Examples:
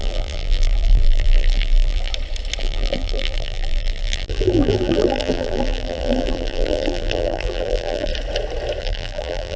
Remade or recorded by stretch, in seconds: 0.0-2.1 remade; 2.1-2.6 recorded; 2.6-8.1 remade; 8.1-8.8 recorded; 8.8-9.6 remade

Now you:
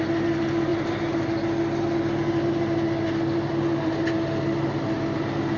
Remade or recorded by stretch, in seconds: 0.0-5.6 recorded

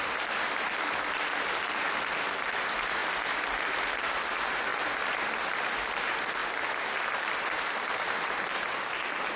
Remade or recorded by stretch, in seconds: 0.0-3.0 remade; 3.0-3.6 recorded; 3.6-4.7 remade; 4.7-5.4 recorded; 5.4-6.4 remade; 6.4-7.1 recorded; 7.1-9.4 remade

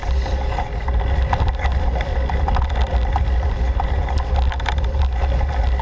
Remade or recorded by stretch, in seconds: 0.0-5.8 recorded

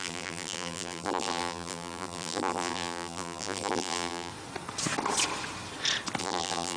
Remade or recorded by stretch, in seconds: 0.0-4.3 remade; 4.3-6.2 recorded; 6.2-6.8 remade

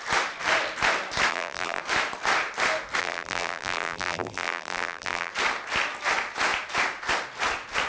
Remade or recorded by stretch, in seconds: 0.0-1.3 recorded; 1.3-1.8 remade; 1.8-3.0 recorded; 3.0-5.3 remade; 5.3-7.9 recorded

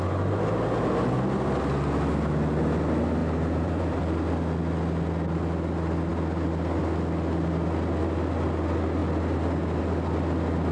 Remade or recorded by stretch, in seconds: 0.0-3.2 recorded; 3.2-4.0 remade; 4.0-10.7 recorded